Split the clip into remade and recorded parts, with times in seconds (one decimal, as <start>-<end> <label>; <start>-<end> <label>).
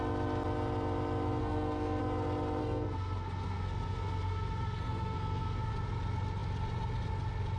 0.0-1.4 recorded; 1.4-2.0 remade; 2.0-2.6 recorded; 2.6-5.7 remade; 5.7-7.6 recorded